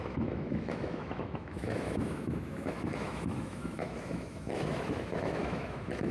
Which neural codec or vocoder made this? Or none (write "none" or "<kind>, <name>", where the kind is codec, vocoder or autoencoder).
autoencoder, DAC-VAE